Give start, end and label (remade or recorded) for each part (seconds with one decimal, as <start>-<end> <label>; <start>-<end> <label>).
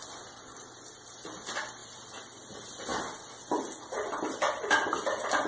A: 0.0-5.5 recorded